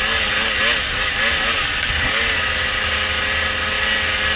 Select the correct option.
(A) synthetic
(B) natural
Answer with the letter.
B